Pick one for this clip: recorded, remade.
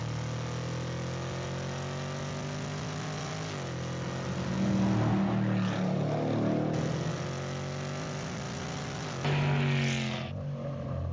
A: recorded